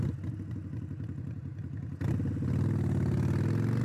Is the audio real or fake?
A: real